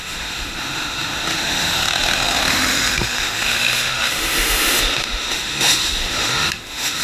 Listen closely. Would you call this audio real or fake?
fake